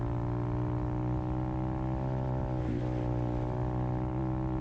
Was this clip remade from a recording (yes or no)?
no